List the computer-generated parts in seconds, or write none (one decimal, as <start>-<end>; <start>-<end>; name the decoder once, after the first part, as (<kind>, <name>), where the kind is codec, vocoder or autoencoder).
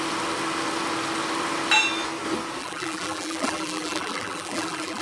2.6-5.0 (vocoder, BigVGAN v2)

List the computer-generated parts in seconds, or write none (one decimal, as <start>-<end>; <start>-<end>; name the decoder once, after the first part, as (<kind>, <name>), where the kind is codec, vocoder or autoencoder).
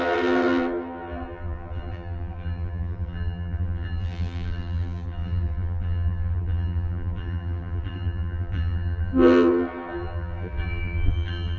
0.0-11.6 (vocoder, BigVGAN v2)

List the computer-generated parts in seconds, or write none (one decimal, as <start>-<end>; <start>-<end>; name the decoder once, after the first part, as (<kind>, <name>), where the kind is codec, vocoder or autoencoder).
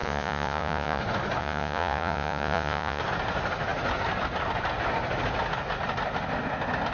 0.0-1.0 (vocoder, Vocos); 1.4-3.0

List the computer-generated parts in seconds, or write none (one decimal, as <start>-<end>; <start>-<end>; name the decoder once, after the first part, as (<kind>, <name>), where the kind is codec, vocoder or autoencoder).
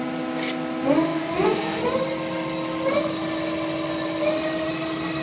none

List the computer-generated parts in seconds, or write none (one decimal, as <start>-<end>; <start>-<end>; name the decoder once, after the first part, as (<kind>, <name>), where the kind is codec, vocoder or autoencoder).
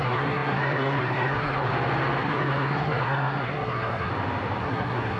0.0-1.7 (codec, SNAC); 2.2-4.1; 4.6-5.2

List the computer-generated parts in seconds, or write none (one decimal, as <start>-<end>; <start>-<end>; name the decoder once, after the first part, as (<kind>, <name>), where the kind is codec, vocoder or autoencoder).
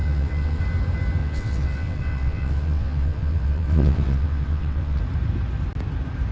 0.0-0.6 (vocoder, WaveNeXt); 1.2-5.0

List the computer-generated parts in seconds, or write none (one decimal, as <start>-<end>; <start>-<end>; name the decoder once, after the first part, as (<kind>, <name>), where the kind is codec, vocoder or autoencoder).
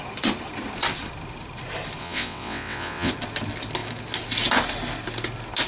2.0-3.1 (vocoder, WaveNeXt)